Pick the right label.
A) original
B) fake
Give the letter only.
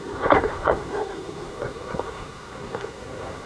B